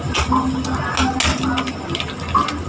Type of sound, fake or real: real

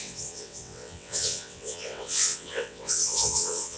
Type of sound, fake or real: fake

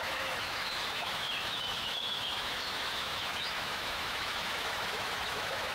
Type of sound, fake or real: fake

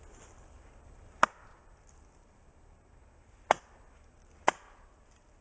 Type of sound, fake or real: real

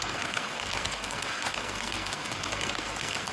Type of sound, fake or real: fake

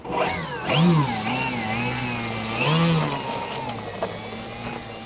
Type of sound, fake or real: real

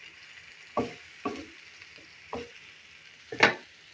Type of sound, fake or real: real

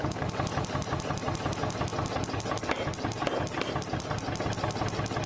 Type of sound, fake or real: real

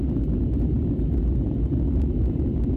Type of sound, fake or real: real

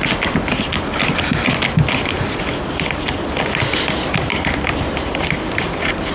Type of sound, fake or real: fake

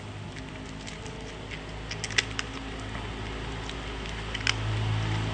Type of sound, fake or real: real